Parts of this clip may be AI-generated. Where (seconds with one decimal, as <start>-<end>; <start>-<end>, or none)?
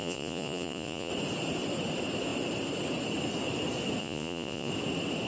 0.0-1.1; 4.0-4.7